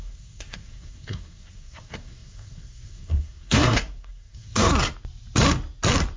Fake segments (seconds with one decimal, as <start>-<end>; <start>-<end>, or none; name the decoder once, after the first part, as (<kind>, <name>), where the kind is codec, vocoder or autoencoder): 0.0-4.7 (codec, SNAC)